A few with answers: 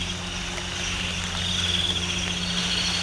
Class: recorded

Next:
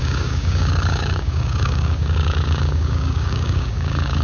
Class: remade